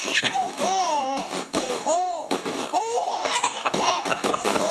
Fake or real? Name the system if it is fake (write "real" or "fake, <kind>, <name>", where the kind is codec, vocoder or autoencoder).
fake, codec, DAC